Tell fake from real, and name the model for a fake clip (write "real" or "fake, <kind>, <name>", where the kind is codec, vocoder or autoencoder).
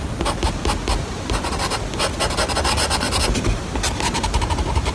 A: real